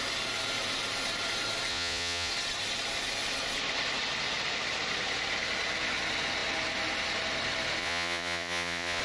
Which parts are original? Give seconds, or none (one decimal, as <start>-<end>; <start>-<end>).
0.0-1.7; 2.3-7.8